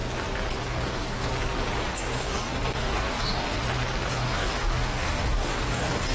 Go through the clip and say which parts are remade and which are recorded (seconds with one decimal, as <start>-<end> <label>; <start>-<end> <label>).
0.0-0.6 recorded; 0.6-1.3 remade; 1.3-1.8 recorded; 1.8-3.6 remade; 3.6-4.1 recorded; 4.1-6.1 remade